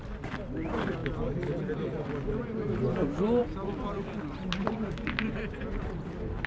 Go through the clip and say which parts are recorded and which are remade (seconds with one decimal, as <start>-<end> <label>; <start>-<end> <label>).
0.0-1.0 remade; 1.0-2.8 recorded; 2.8-3.4 remade; 3.4-5.8 recorded; 5.8-6.5 remade